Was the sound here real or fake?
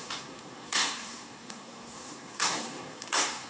fake